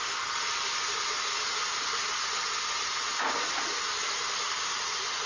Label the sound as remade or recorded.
recorded